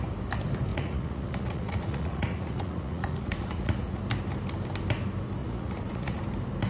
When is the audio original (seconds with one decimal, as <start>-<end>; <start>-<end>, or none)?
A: 0.0-0.7; 4.0-5.4; 6.2-6.7